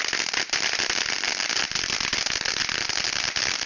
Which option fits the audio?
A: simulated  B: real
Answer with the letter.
B